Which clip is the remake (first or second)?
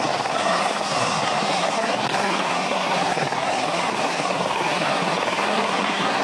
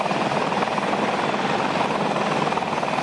first